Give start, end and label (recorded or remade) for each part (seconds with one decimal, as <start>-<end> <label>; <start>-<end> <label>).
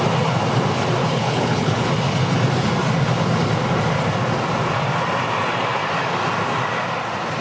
0.0-1.0 recorded; 1.0-1.8 remade; 1.8-7.4 recorded